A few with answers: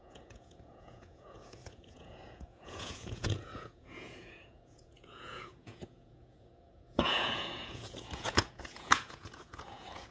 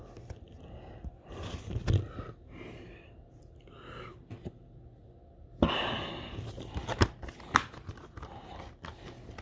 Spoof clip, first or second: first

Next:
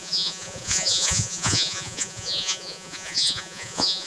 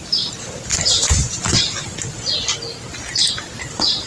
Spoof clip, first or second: first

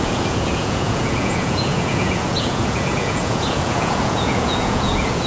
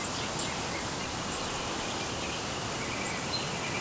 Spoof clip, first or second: first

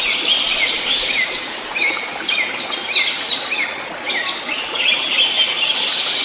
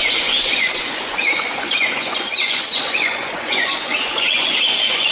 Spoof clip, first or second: second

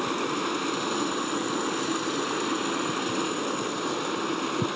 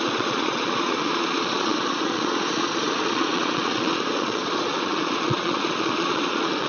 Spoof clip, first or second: second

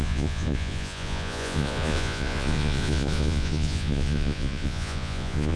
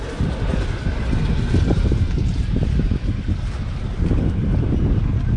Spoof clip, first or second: first